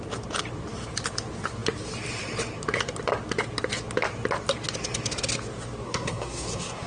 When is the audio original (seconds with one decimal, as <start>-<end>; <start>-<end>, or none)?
0.0-5.8